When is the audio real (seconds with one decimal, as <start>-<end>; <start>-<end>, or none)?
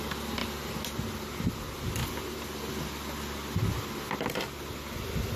0.0-5.4